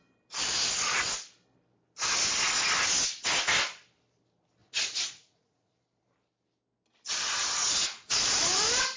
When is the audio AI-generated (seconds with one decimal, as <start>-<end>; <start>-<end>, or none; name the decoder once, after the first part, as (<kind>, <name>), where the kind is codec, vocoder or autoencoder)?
4.6-5.7 (vocoder, Vocos); 7.6-8.6